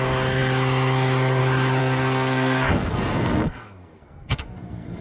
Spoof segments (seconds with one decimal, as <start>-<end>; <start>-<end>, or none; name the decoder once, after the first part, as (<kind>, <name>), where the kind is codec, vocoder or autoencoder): 1.8-5.0 (codec, SNAC)